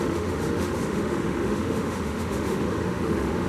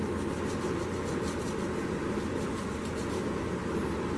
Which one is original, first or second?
second